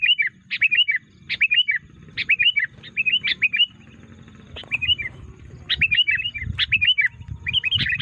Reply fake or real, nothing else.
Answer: real